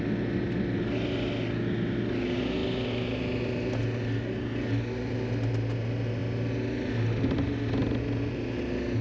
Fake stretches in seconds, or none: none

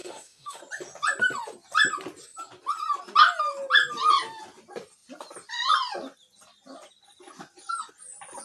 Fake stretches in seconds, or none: 0.0-0.6 (autoencoder, DAC-VAE)

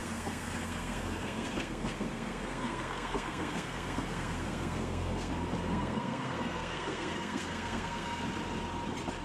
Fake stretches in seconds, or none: 0.0-5.3 (codec, SNAC); 5.7-8.2

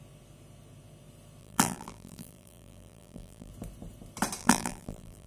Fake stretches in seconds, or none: 1.4-3.5 (vocoder, BigVGAN v2); 4.4-5.3

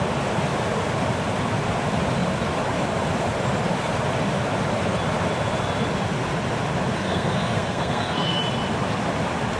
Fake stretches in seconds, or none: 6.9-8.4 (codec, SNAC)

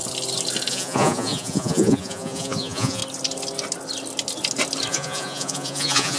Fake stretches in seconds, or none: 0.7-3.0 (vocoder, Vocos); 4.9-6.2

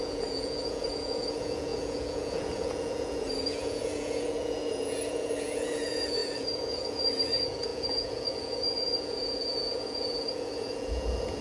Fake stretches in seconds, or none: 0.0-11.4 (vocoder, Vocos)